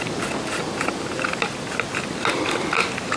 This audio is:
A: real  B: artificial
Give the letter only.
A